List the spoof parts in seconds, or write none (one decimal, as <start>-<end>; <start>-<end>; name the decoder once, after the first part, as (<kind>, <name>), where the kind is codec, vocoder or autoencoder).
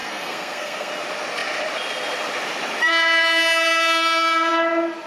0.0-0.9 (codec, SNAC)